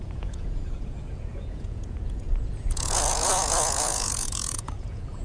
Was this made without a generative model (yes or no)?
no